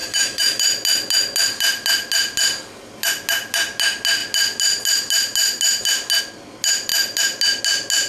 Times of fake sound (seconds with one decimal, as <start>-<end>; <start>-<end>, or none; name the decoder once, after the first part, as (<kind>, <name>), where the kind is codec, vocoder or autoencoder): 0.0-0.6 (autoencoder, DAC-VAE)